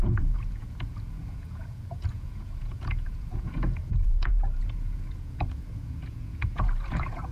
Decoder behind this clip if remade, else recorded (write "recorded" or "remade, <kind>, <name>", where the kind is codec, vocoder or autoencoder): remade, vocoder, Vocos